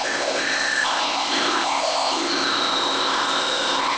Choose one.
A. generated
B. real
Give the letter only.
A